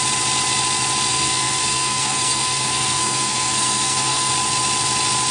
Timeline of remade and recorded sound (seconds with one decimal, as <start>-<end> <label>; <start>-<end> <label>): 0.0-1.1 recorded; 1.1-4.3 remade; 4.3-5.3 recorded